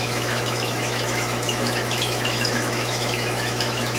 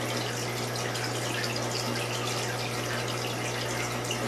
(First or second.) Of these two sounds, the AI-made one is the first